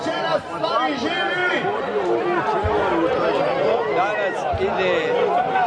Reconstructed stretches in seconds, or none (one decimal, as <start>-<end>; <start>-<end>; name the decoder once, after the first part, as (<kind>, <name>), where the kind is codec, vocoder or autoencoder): 1.4-3.2 (vocoder, BigVGAN v2)